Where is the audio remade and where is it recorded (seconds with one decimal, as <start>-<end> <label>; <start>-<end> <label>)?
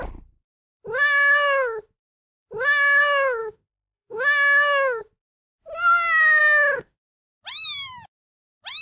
0.0-3.4 recorded; 3.4-5.0 remade; 5.0-6.4 recorded; 6.4-7.0 remade; 7.0-8.8 recorded